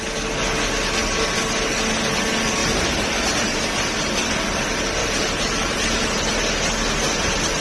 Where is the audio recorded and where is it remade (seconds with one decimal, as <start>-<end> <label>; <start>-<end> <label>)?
0.0-2.6 recorded; 2.6-3.2 remade; 3.2-5.0 recorded; 5.0-6.3 remade; 6.3-7.6 recorded